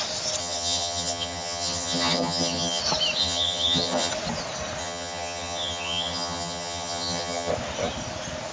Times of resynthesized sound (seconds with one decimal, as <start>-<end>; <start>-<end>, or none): 0.4-2.8; 3.2-4.1; 4.8-7.5

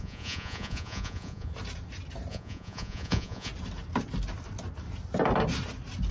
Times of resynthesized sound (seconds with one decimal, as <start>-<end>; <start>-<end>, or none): 0.0-1.5; 2.3-3.5

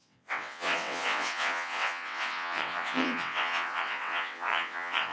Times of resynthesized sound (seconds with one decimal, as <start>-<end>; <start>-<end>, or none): 0.0-5.1